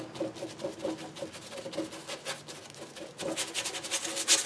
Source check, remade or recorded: recorded